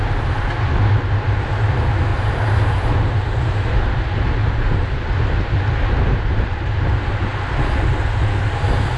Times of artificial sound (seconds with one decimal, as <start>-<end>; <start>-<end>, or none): 2.1-5.1